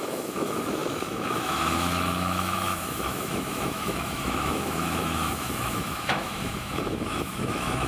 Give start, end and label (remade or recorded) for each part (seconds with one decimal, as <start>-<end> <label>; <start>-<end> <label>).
0.0-7.9 remade